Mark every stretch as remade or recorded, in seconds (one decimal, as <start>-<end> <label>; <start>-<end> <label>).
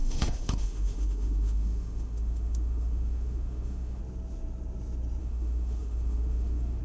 0.0-4.0 remade; 4.0-5.2 recorded; 5.2-6.8 remade